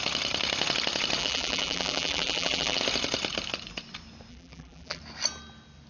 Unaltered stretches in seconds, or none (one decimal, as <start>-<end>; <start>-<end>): 0.0-1.2; 2.8-4.3; 5.0-5.9